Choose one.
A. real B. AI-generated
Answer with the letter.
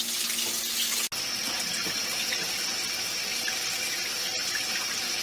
A